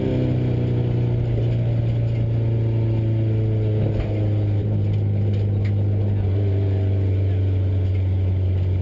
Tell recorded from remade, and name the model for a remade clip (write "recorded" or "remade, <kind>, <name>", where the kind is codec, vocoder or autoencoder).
recorded